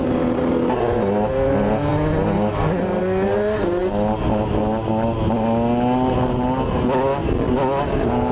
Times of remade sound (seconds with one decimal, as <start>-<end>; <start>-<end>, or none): none

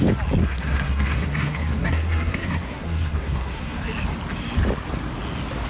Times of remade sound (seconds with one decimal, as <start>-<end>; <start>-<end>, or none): 0.4-3.8

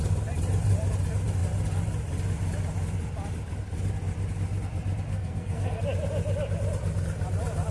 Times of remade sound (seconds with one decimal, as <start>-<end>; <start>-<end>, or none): 5.1-5.8

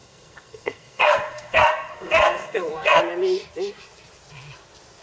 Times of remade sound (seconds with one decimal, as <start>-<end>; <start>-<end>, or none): 0.0-3.0

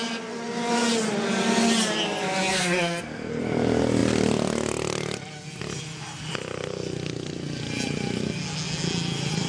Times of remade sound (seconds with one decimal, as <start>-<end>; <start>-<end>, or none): 2.5-3.4

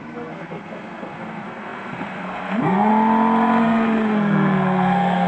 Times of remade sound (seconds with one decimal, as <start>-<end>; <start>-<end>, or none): 0.0-2.9; 3.6-5.3